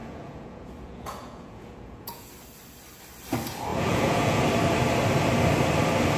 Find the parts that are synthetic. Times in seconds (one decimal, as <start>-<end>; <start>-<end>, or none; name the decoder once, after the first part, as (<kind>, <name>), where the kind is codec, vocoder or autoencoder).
0.0-2.3 (vocoder, Vocos); 3.7-4.4